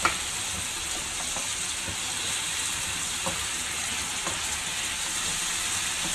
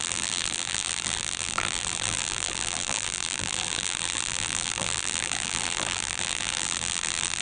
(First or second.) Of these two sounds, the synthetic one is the second